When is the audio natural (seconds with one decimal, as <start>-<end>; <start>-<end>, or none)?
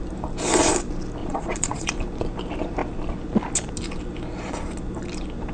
0.0-1.2; 1.9-5.5